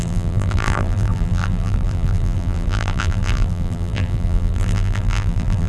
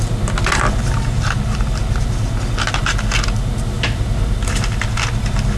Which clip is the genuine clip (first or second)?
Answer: second